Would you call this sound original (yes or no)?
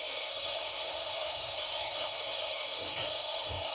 no